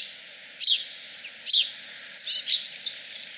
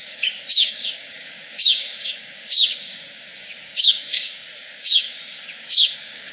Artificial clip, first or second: second